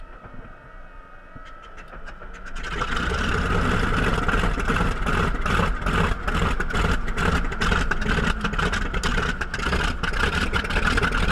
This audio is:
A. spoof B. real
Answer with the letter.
B